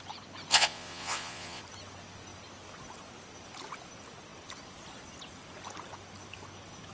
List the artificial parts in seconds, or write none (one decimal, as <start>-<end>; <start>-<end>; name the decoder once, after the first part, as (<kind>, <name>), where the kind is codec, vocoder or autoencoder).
0.5-1.6 (vocoder, Vocos)